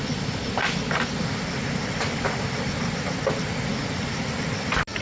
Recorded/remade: recorded